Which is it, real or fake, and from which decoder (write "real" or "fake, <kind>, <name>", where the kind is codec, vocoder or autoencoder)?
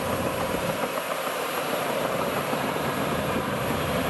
fake, vocoder, BigVGAN v2